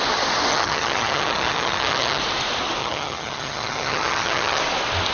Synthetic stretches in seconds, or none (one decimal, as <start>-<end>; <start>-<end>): 0.5-2.2; 2.8-4.6